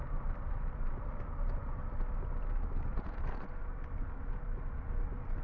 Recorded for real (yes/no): yes